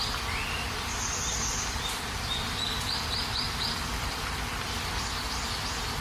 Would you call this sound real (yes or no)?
no